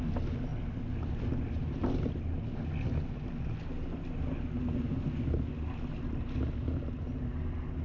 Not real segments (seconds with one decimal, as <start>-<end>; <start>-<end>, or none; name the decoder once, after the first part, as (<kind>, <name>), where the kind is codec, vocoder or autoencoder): none